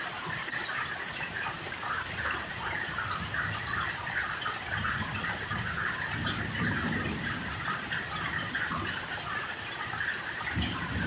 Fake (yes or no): yes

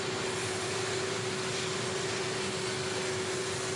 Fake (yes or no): no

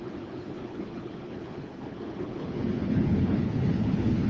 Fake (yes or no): yes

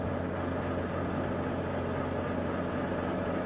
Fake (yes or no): no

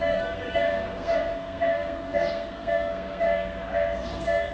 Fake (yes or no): yes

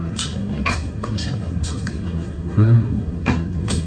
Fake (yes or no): yes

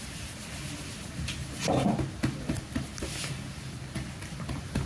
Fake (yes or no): no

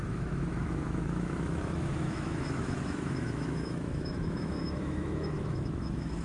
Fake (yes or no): yes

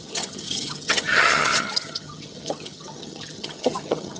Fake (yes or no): yes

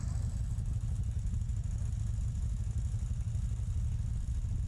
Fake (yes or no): no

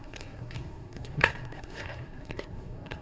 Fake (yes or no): yes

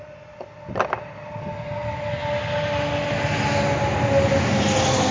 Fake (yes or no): no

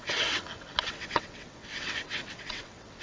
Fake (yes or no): yes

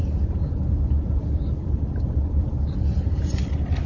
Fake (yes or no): yes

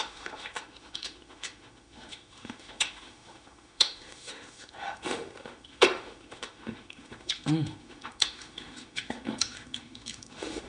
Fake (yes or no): yes